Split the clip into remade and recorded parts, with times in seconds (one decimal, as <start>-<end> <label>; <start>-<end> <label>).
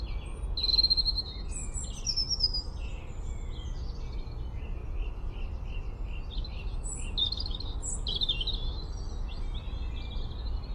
0.0-4.8 recorded; 4.8-5.5 remade; 5.5-10.7 recorded